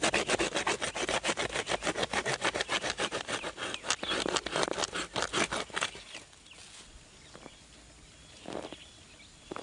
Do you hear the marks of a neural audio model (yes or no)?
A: no